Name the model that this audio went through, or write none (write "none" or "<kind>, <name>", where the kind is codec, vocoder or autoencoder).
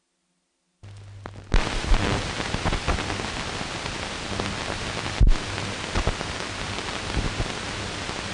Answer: none